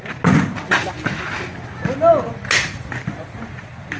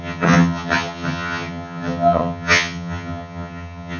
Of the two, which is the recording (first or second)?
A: first